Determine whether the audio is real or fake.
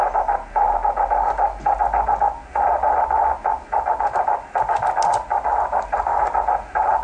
real